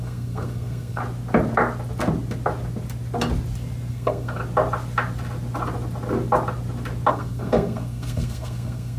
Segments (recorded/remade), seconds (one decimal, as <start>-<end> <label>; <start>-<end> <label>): 0.0-1.0 remade; 1.0-3.9 recorded; 3.9-4.4 remade; 4.4-7.1 recorded; 7.1-9.0 remade